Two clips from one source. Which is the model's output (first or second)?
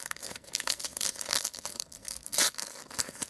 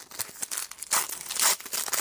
first